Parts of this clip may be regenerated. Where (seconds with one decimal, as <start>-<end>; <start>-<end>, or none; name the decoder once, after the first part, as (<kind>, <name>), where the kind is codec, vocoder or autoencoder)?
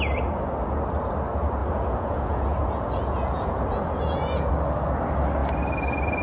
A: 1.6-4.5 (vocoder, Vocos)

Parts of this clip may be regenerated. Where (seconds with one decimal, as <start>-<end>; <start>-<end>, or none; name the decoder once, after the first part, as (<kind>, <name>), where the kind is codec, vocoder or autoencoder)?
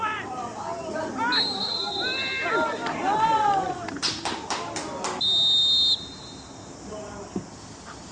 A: none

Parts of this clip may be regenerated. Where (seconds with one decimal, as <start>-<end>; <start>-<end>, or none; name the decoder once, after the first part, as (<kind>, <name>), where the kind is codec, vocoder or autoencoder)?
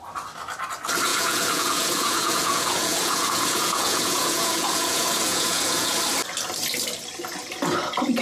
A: 1.1-6.0 (vocoder, Vocos)